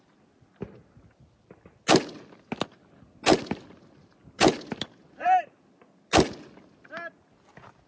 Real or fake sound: real